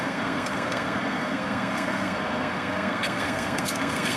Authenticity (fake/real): fake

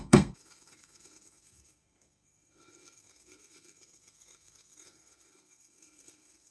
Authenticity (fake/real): fake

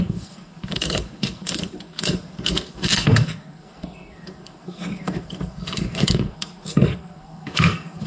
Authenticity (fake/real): fake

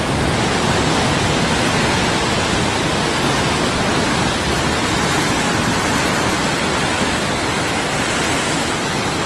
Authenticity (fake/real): real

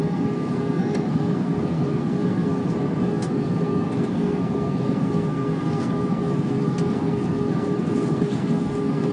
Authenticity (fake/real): fake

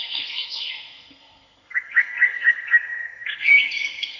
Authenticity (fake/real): fake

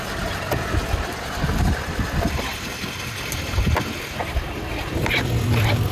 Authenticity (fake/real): real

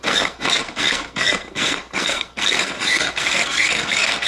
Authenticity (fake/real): fake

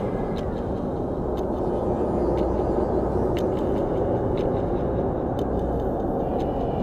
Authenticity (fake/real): real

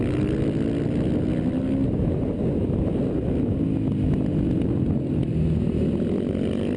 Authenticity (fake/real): real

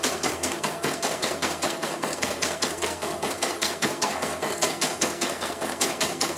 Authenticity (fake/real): fake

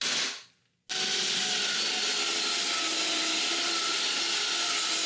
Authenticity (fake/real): real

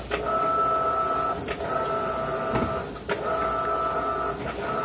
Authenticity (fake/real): real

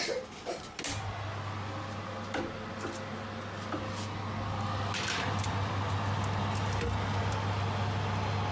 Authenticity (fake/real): real